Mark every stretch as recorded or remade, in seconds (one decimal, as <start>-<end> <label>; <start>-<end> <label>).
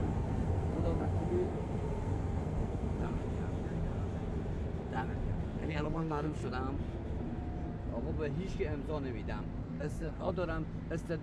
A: 0.0-3.2 remade; 3.2-5.6 recorded; 5.6-6.5 remade; 6.5-9.6 recorded; 9.6-10.3 remade; 10.3-11.2 recorded